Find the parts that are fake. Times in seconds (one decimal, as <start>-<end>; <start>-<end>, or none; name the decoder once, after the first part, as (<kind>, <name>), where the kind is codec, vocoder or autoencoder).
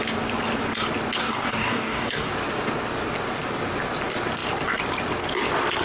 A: 1.2-2.3 (codec, DAC)